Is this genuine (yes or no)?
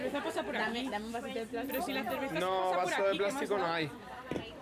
yes